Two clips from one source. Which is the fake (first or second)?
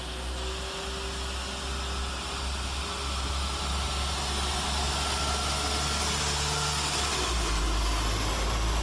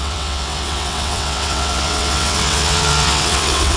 second